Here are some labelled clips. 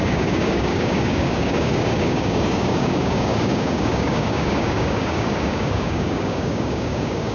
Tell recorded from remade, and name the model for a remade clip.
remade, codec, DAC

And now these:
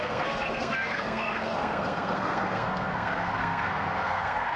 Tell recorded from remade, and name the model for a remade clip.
remade, codec, SNAC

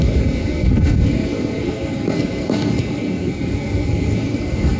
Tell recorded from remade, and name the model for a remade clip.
remade, codec, SNAC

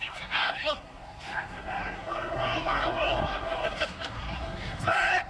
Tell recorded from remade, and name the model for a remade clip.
remade, codec, SNAC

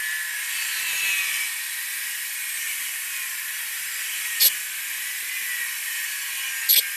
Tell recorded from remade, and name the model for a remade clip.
recorded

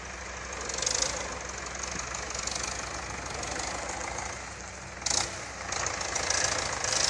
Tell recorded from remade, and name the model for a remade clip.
recorded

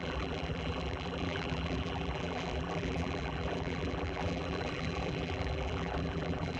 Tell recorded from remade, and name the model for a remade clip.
remade, vocoder, BigVGAN v2